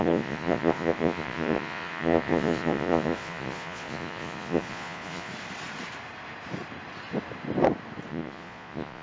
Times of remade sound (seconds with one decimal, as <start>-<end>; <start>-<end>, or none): 0.0-5.3; 8.1-9.0